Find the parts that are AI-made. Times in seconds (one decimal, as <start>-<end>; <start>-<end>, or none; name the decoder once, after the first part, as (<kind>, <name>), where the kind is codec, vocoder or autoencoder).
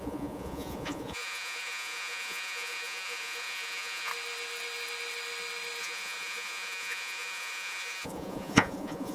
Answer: 0.0-4.1 (vocoder, Vocos); 5.8-9.1